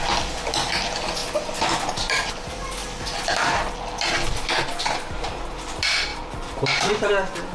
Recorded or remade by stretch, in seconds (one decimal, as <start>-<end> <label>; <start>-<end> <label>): 0.0-6.1 recorded; 6.1-7.1 remade; 7.1-7.5 recorded